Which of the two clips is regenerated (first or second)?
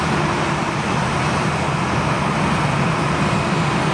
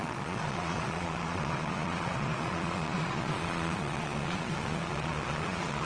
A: second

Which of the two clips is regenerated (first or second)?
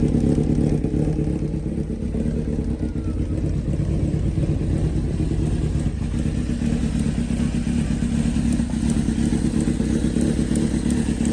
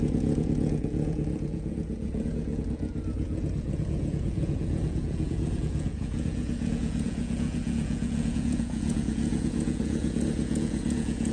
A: second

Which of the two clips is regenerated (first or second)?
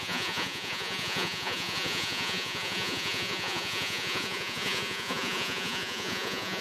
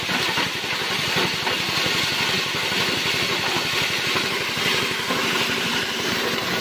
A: first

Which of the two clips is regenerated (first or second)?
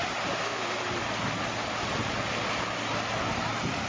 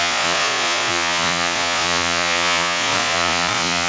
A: second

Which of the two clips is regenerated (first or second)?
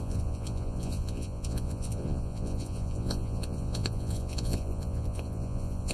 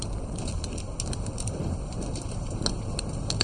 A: first